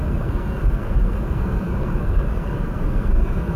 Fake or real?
fake